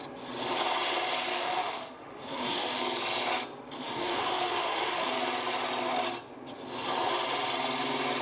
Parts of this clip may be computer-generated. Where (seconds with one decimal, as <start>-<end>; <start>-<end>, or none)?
1.3-2.8; 3.8-5.1